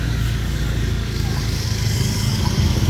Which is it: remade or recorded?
remade